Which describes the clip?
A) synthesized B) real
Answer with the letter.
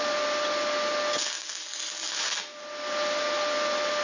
B